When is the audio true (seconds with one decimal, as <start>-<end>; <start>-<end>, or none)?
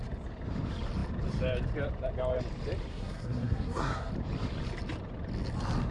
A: 0.0-2.9; 4.1-5.9